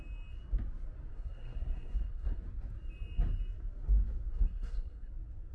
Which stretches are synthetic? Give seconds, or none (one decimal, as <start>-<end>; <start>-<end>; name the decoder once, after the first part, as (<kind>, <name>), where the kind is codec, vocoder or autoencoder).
1.1-2.4 (codec, SNAC); 4.3-5.1